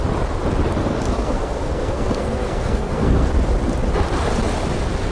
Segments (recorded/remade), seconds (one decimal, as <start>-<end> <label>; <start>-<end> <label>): 0.0-0.9 recorded; 0.9-3.3 remade; 3.3-5.1 recorded